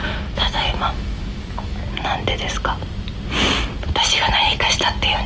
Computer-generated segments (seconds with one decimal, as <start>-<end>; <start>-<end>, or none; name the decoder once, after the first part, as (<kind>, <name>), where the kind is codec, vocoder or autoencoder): 0.0-1.8 (autoencoder, DAC-VAE)